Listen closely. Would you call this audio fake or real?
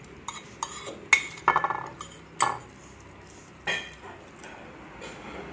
real